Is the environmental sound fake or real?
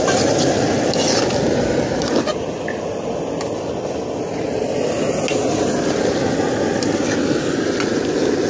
real